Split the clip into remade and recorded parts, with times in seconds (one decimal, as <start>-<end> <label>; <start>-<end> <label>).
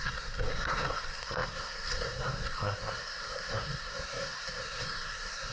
0.0-5.5 remade